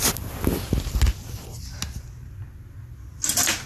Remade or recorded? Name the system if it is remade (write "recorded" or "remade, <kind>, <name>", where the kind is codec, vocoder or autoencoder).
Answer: recorded